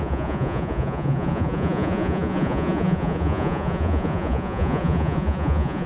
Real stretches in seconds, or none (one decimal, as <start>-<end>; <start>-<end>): none